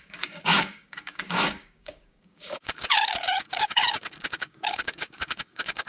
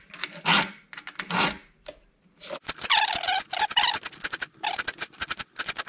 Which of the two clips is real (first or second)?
second